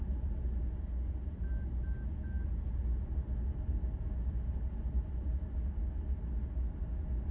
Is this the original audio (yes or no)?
yes